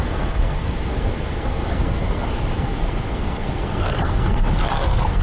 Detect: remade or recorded remade